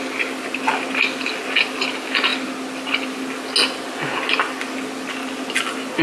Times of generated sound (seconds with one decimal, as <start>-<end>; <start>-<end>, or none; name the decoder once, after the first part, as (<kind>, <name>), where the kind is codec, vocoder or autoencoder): none